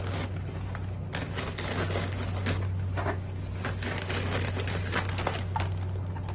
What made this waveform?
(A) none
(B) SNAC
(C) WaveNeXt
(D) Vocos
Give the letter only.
A